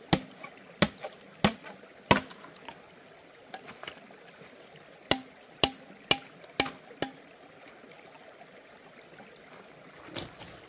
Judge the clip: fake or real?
real